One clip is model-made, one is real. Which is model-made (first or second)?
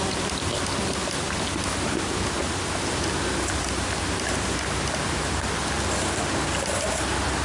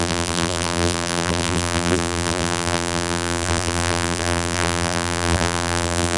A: second